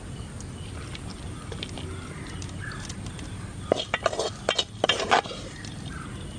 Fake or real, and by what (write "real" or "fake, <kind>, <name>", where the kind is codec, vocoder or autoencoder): real